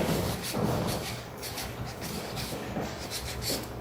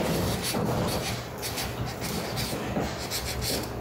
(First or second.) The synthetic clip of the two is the first